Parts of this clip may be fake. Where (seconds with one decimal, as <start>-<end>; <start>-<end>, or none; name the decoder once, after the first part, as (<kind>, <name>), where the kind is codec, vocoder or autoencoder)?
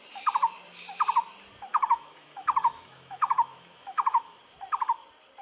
1.7-4.4 (autoencoder, DAC-VAE)